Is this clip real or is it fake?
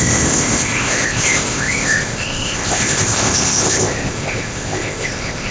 fake